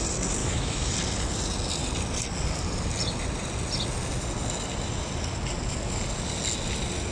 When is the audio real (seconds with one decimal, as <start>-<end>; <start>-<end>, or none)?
0.0-0.4; 0.9-7.1